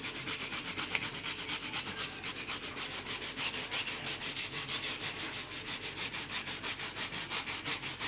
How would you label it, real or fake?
real